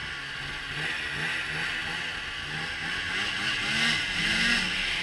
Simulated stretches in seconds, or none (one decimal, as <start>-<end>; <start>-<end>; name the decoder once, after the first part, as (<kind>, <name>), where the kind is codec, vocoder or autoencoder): none